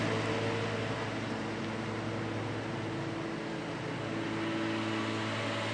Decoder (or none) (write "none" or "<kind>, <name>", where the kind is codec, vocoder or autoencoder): none